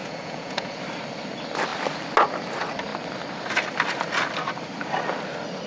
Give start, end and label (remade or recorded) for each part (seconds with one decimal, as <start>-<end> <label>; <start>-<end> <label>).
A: 0.0-0.8 remade; 0.8-5.7 recorded